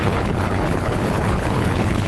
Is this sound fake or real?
fake